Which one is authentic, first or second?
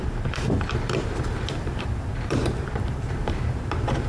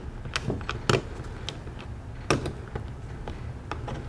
second